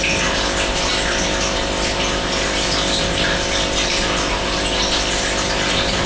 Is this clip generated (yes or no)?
no